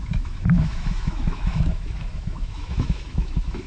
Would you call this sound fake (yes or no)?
yes